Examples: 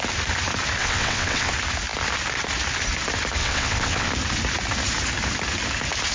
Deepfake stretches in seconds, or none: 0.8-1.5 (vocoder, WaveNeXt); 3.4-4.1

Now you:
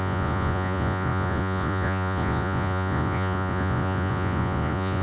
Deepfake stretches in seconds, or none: 0.0-5.0 (vocoder, Vocos)

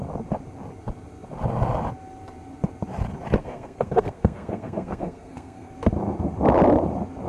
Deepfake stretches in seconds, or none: 3.4-5.7 (codec, SNAC)